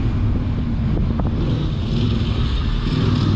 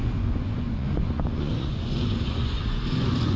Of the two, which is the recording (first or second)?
first